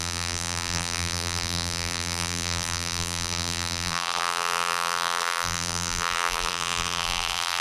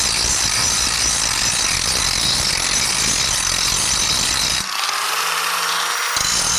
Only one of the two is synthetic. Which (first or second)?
first